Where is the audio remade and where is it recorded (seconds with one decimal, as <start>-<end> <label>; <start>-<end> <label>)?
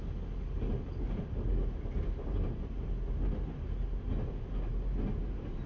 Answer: 0.0-5.7 recorded